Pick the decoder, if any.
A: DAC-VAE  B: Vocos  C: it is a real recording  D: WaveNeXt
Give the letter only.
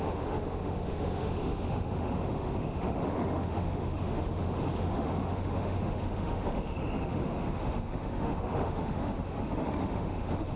A